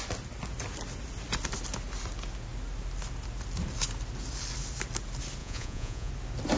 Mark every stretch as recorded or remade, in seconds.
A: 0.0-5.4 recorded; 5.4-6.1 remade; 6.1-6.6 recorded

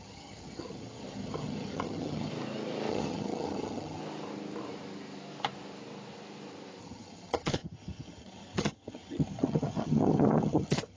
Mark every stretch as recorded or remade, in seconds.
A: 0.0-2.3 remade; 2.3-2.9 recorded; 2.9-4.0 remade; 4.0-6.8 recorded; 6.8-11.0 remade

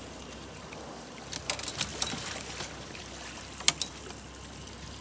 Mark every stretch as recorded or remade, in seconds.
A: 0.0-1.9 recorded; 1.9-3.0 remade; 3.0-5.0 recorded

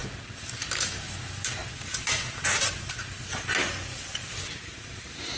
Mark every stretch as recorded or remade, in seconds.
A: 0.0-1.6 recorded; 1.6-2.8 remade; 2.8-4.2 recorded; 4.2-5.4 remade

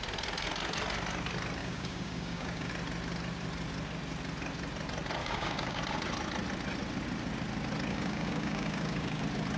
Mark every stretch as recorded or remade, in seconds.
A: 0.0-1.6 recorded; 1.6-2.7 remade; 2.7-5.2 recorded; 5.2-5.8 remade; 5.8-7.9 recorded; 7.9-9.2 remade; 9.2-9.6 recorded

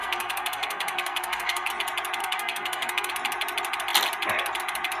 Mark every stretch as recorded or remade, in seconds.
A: 0.0-1.7 remade; 1.7-2.2 recorded; 2.2-3.1 remade; 3.1-5.0 recorded

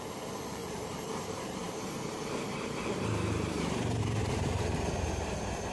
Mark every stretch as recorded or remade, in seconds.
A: 0.0-5.7 remade